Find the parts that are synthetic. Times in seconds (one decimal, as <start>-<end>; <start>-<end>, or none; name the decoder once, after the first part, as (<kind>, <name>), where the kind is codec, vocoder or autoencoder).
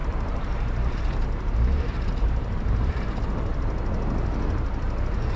0.0-3.2 (vocoder, BigVGAN v2)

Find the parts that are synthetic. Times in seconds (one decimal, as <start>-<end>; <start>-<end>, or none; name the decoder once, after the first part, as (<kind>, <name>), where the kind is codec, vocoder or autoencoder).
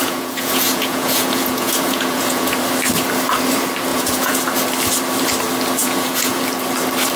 0.0-2.6 (vocoder, Vocos); 3.9-4.4; 5.8-6.4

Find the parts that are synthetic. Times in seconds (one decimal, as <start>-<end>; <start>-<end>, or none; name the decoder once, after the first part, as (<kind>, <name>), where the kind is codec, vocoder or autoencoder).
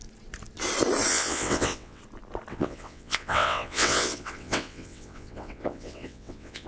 1.1-2.0 (vocoder, WaveNeXt); 2.5-6.7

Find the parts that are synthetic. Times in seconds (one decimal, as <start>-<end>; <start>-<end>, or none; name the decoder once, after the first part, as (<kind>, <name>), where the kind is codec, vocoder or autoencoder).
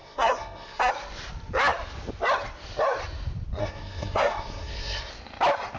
0.0-0.9 (codec, SNAC); 3.6-5.1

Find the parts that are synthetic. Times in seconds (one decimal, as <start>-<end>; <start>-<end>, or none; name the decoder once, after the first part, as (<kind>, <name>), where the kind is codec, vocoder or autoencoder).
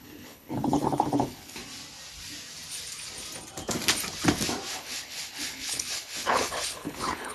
0.0-1.6 (codec, HILCodec); 4.7-7.3